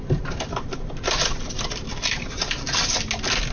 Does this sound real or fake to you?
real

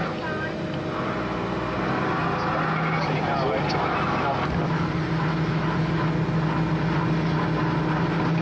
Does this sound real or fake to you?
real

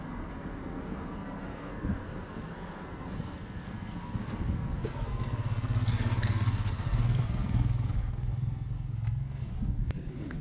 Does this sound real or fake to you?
fake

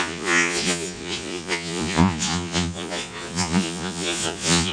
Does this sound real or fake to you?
fake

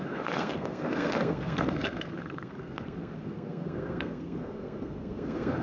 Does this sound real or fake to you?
fake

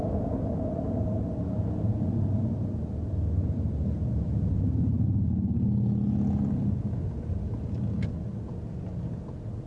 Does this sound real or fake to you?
real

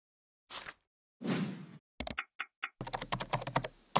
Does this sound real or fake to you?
real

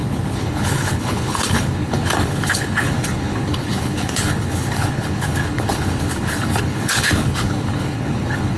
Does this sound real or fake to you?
fake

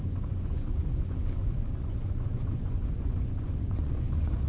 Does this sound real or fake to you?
fake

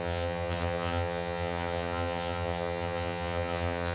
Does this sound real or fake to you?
fake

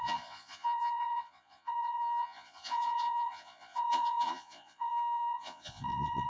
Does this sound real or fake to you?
fake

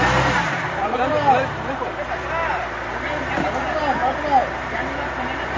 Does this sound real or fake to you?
real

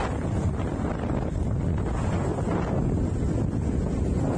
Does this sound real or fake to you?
real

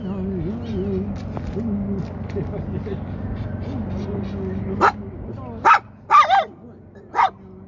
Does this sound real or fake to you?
real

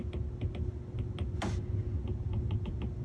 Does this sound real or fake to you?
real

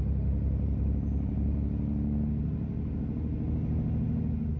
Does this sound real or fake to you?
real